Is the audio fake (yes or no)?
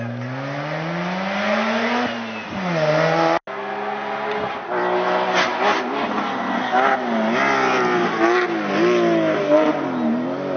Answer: no